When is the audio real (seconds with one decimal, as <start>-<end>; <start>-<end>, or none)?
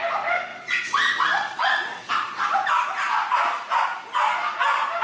0.0-0.5; 2.1-5.0